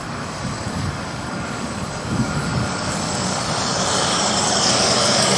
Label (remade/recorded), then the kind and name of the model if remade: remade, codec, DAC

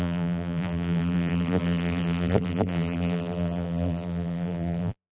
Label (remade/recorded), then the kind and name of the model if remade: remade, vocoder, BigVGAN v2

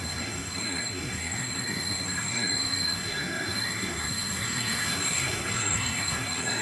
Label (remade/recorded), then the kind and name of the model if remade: remade, codec, SNAC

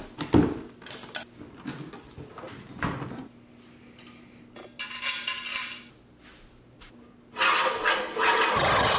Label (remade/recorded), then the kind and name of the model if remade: recorded